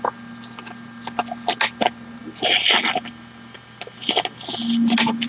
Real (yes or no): yes